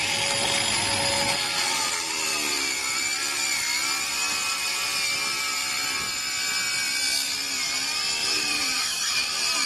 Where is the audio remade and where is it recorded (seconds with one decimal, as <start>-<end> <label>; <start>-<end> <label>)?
0.0-8.2 recorded; 8.2-8.8 remade; 8.8-9.7 recorded